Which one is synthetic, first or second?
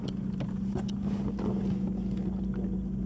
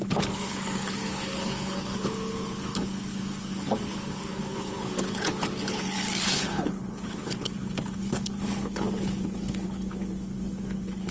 second